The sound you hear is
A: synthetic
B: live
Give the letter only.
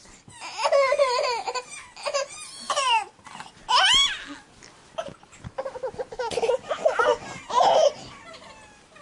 B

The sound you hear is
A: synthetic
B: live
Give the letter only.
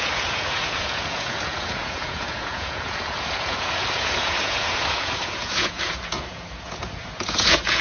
A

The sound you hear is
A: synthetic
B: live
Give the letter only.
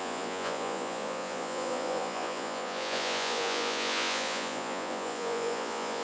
A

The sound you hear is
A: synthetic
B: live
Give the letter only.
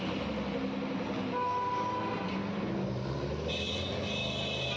B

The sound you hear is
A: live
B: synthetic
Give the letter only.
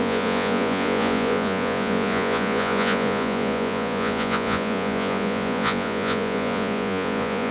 B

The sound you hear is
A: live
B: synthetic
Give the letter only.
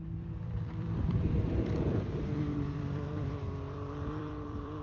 B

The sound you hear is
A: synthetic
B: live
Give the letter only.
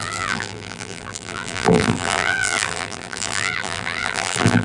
A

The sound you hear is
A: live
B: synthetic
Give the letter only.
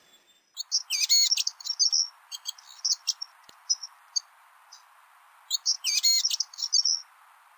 A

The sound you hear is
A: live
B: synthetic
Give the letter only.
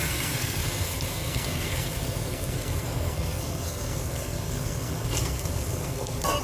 B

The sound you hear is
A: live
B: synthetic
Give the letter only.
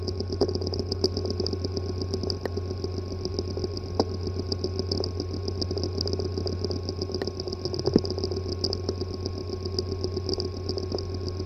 A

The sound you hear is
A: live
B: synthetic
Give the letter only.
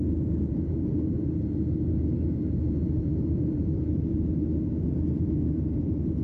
A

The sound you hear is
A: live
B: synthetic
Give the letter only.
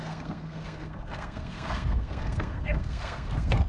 B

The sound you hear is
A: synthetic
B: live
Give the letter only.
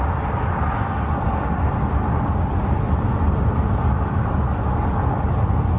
B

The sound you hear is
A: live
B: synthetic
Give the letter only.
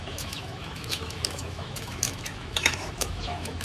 B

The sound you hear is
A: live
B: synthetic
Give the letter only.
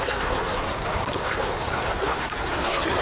B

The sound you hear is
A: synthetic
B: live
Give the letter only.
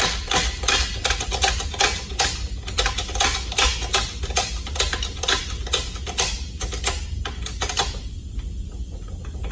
B